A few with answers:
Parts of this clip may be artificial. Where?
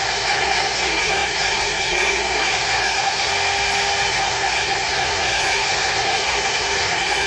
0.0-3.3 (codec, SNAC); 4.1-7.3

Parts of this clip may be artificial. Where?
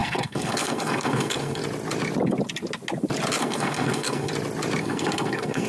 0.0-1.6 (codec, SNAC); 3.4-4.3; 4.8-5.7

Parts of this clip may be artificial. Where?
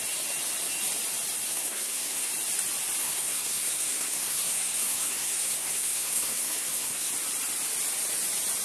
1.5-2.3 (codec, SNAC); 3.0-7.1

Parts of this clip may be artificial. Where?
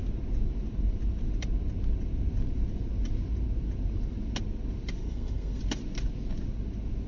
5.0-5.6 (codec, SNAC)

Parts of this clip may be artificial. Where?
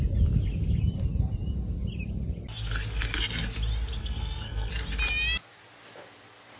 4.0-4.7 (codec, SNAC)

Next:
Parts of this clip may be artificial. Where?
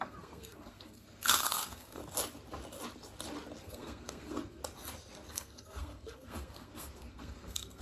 0.0-2.0 (codec, SNAC); 3.6-4.6; 5.3-7.8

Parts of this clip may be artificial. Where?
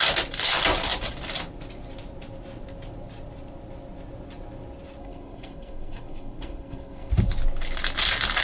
5.0-7.1 (codec, SNAC)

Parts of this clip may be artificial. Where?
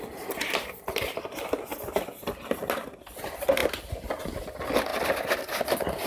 none